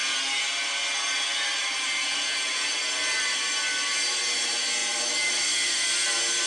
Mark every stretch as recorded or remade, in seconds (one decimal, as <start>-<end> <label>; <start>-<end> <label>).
0.0-6.5 recorded